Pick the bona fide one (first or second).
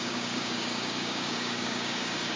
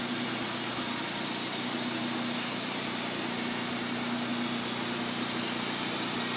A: second